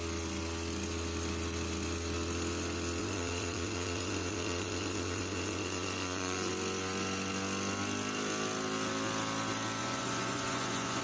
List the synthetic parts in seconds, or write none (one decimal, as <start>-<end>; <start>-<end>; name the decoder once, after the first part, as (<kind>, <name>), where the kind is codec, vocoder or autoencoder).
3.0-6.5 (vocoder, Vocos); 9.8-11.0

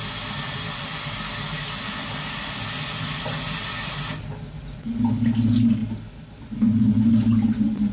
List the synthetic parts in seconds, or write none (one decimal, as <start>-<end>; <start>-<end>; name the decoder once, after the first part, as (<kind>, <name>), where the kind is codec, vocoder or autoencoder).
none

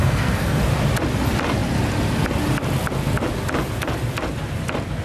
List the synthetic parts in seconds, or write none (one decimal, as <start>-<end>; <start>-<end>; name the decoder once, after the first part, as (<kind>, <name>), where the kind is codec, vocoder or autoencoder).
0.0-0.6 (codec, SNAC)

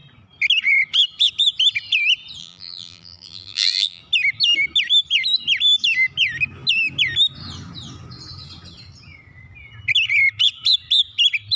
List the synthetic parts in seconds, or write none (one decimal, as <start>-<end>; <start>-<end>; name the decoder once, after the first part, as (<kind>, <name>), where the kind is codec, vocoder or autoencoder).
2.4-4.0 (vocoder, BigVGAN v2)

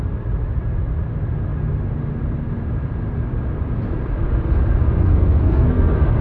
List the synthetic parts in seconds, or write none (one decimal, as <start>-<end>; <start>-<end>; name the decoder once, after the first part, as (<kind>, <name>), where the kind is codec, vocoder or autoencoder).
5.0-6.2 (codec, SNAC)

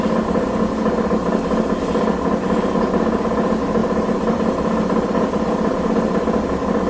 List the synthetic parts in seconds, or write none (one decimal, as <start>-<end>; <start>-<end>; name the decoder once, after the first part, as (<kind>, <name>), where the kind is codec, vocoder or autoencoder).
3.8-6.4 (vocoder, BigVGAN v2)